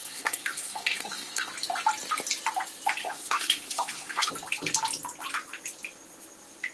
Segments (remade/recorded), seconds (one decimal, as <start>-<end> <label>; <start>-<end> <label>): 0.0-1.5 remade; 1.5-3.0 recorded; 3.0-4.3 remade; 4.3-6.7 recorded